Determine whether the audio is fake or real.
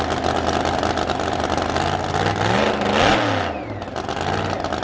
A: real